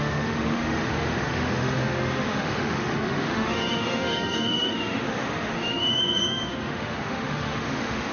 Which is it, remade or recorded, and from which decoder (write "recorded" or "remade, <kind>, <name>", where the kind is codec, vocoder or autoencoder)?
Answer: remade, autoencoder, DAC-VAE